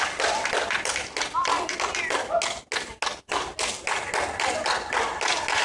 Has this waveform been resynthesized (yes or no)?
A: no